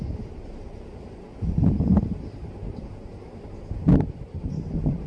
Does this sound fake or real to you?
real